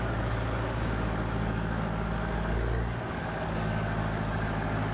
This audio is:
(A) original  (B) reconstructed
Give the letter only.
B